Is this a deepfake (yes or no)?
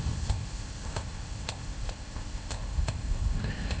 yes